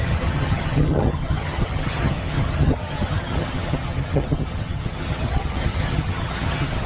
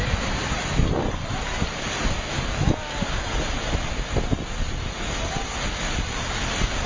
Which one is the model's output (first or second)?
first